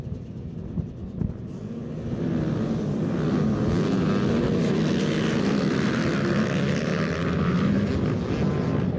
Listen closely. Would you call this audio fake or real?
real